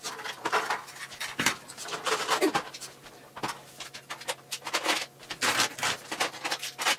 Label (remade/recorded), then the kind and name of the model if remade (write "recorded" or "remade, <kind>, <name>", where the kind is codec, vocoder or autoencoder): recorded